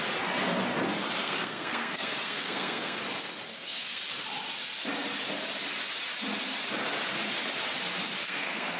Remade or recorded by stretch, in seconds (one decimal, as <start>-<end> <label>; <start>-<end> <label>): 0.0-1.2 recorded; 1.2-3.0 remade; 3.0-3.5 recorded; 3.5-4.0 remade; 4.0-8.2 recorded; 8.2-8.8 remade